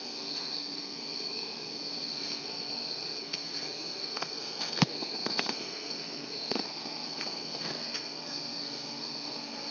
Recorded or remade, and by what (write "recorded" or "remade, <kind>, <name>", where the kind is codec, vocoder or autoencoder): remade, codec, SNAC